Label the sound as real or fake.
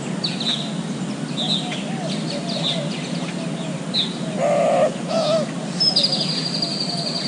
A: real